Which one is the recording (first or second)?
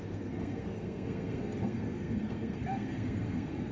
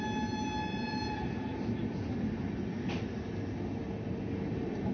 second